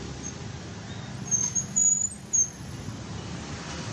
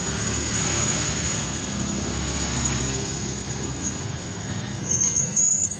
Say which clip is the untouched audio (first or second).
first